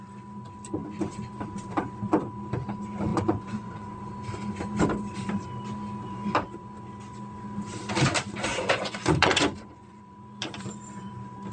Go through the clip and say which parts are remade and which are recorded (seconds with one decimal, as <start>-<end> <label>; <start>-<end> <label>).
0.0-3.1 recorded; 3.1-4.1 remade; 4.1-8.5 recorded; 8.5-10.0 remade; 10.0-11.5 recorded